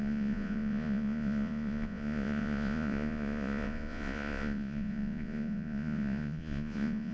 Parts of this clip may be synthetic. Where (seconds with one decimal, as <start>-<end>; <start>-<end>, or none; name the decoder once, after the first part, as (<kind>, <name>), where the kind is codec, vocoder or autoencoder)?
0.0-7.1 (vocoder, Vocos)